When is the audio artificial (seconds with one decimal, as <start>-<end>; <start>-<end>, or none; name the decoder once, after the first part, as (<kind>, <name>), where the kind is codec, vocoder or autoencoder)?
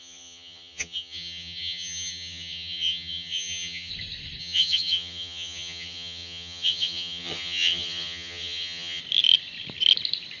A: 0.0-3.9 (vocoder, HiFi-GAN); 4.4-9.0